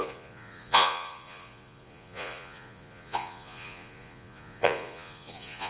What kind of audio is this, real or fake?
fake